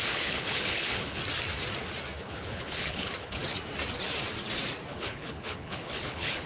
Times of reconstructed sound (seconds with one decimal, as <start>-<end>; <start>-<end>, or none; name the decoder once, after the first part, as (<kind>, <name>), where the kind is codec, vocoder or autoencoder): 0.0-1.2 (codec, HILCodec); 2.2-3.4; 4.9-6.5